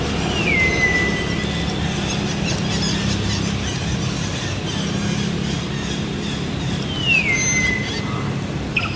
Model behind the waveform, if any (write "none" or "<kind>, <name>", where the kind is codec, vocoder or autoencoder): none